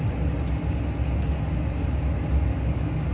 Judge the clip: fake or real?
real